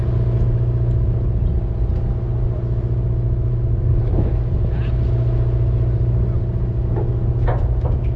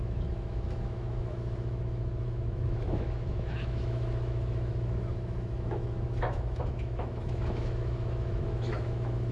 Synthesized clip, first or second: second